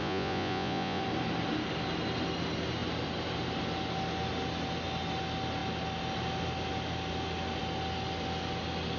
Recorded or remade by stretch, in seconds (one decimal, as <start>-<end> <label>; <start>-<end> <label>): 0.0-1.0 remade; 1.0-9.0 recorded